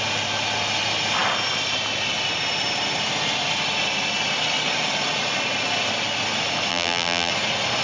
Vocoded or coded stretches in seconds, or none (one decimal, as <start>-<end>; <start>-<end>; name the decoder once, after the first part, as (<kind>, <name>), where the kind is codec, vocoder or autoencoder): 6.7-7.3 (vocoder, BigVGAN v2)